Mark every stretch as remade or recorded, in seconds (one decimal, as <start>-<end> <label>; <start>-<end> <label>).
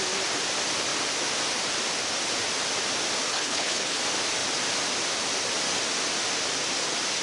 0.0-3.3 recorded; 3.3-4.0 remade; 4.0-7.2 recorded